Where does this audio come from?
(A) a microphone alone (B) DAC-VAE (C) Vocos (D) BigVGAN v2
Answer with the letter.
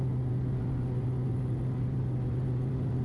A